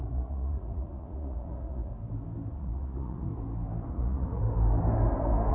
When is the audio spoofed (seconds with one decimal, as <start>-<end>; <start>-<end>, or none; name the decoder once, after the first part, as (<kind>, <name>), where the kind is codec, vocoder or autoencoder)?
0.0-1.9 (vocoder, Vocos); 2.5-3.3; 3.9-4.4